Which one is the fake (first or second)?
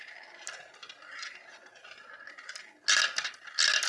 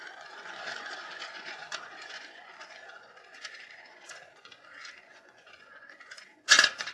second